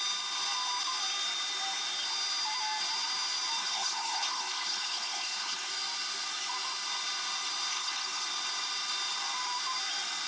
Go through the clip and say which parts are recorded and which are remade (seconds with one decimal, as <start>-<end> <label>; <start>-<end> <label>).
0.0-3.6 recorded; 3.6-5.7 remade; 5.7-7.7 recorded; 7.7-8.3 remade; 8.3-10.3 recorded